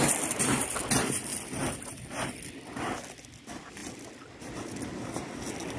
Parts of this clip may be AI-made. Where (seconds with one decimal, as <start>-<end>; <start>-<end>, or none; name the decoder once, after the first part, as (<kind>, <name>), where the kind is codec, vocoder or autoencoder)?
1.3-2.1 (vocoder, BigVGAN v2)